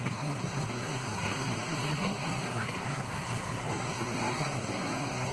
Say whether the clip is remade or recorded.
remade